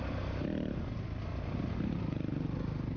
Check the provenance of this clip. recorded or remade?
recorded